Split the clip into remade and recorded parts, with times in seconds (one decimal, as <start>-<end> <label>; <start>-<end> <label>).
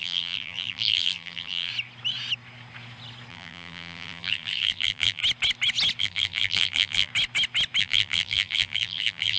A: 0.0-1.7 remade; 1.7-3.3 recorded; 3.3-5.2 remade; 5.2-6.0 recorded; 6.0-7.1 remade; 7.1-7.8 recorded; 7.8-9.4 remade